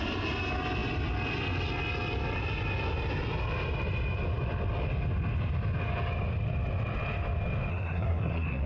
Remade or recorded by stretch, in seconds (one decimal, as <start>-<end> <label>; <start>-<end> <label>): 0.0-7.7 recorded; 7.7-8.7 remade